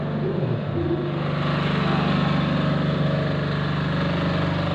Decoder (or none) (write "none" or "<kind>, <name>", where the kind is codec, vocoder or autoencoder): none